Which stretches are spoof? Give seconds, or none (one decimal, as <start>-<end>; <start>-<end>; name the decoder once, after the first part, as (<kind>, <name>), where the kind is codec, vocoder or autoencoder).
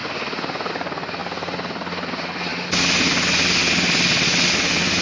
none